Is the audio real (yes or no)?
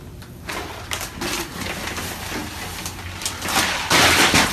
yes